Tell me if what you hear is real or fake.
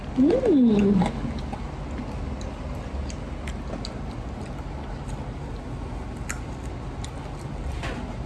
real